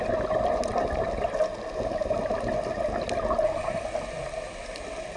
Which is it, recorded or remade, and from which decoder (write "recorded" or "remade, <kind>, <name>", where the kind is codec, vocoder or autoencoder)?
recorded